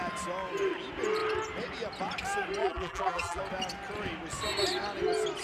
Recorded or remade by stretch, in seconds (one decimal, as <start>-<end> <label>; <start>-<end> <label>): 0.0-2.6 recorded; 2.6-3.4 remade; 3.4-5.4 recorded